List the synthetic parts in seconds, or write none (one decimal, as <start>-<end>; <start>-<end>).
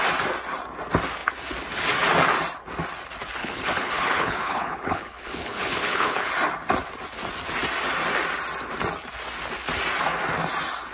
3.4-6.3